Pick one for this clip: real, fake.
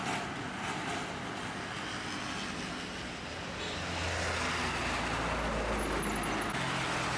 real